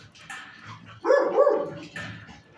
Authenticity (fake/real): real